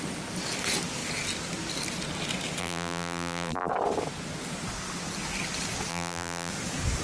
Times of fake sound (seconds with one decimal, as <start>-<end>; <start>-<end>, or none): 2.6-3.7; 5.9-6.5